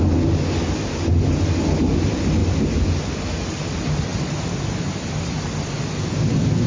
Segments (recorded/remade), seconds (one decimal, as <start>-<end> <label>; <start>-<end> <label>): 0.0-6.7 recorded